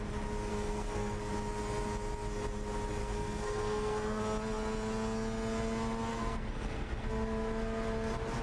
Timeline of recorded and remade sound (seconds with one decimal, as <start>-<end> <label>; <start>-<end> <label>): 0.0-0.5 recorded; 0.5-1.3 remade; 1.3-3.0 recorded; 3.0-4.2 remade; 4.2-6.1 recorded; 6.1-7.1 remade; 7.1-8.4 recorded